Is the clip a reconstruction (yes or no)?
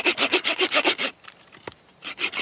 no